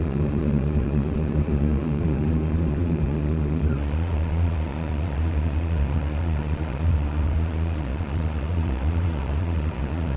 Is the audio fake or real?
fake